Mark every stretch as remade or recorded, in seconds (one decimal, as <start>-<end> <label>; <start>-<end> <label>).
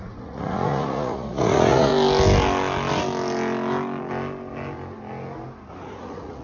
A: 0.0-1.9 remade; 1.9-5.7 recorded; 5.7-6.4 remade